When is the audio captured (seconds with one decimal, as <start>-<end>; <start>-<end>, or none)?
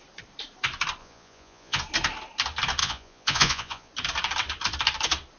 0.0-1.0; 1.8-2.8; 3.9-5.4